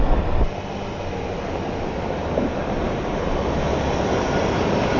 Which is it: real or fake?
real